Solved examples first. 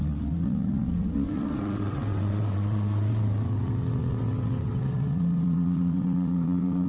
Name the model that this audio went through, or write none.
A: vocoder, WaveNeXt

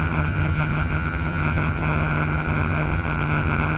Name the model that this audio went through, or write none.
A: vocoder, HiFi-GAN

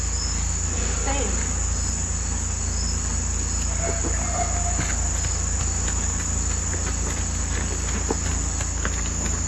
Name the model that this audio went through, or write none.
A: none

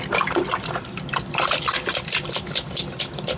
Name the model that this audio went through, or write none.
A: none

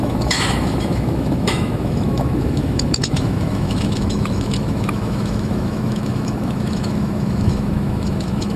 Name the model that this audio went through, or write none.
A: autoencoder, DAC-VAE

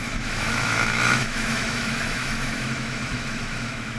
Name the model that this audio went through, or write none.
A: autoencoder, DAC-VAE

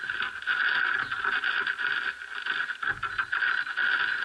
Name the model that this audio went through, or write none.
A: none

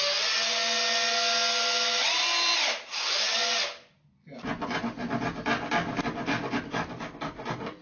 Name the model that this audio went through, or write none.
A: none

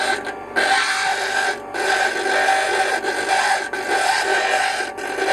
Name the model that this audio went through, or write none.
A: none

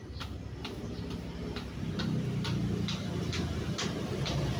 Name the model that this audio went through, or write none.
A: none